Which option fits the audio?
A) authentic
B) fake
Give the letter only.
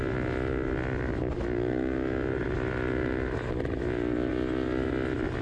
A